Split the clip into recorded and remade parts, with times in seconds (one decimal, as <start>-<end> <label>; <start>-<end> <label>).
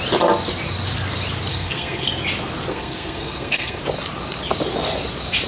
0.0-1.5 recorded; 1.5-2.2 remade; 2.2-2.7 recorded; 2.7-3.8 remade; 3.8-5.5 recorded